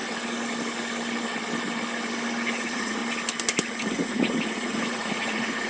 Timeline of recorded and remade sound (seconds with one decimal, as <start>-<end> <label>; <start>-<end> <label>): 0.0-2.6 recorded; 2.6-3.0 remade; 3.0-3.7 recorded; 3.7-5.7 remade

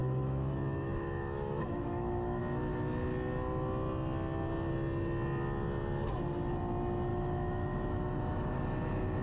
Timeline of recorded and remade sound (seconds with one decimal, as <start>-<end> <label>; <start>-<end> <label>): 0.0-2.4 remade; 2.4-7.1 recorded; 7.1-8.6 remade; 8.6-9.2 recorded

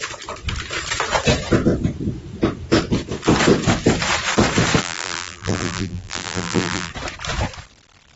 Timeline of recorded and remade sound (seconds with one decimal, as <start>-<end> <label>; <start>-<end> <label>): 0.0-4.8 recorded; 4.8-6.9 remade; 6.9-8.2 recorded

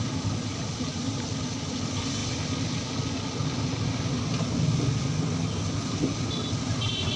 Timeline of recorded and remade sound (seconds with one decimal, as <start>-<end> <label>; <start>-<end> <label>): 0.0-7.2 recorded

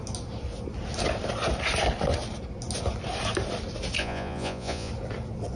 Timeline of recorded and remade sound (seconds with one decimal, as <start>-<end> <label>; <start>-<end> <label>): 0.0-4.0 recorded; 4.0-4.9 remade; 4.9-5.6 recorded

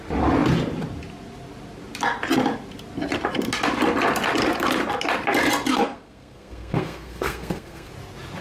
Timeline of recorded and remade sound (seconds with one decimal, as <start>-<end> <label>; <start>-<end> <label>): 0.0-5.7 recorded; 5.7-7.9 remade; 7.9-8.4 recorded

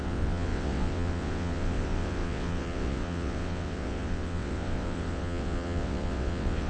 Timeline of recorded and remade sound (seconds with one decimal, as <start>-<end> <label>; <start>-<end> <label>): 0.0-6.7 remade